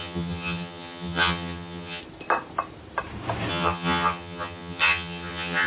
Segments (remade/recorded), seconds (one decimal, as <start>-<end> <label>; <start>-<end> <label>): 0.0-2.0 remade; 2.0-3.5 recorded; 3.5-5.7 remade